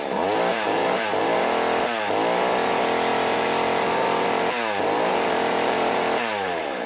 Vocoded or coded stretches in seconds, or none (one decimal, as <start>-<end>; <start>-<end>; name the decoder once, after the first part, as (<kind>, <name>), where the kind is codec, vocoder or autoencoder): 0.5-1.2 (vocoder, BigVGAN v2); 3.1-6.9